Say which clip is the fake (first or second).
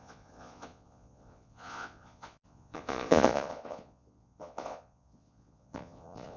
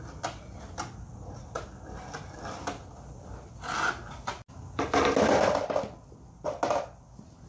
first